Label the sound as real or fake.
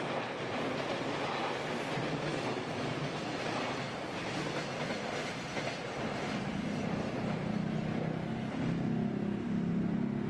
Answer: real